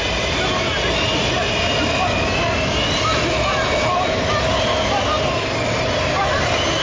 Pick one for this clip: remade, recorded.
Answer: recorded